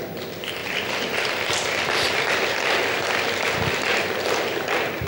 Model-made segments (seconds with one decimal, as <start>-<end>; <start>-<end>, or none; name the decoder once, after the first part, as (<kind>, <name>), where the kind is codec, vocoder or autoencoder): 0.6-2.3 (vocoder, BigVGAN v2)